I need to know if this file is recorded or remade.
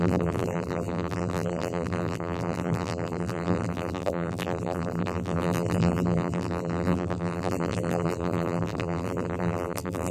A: remade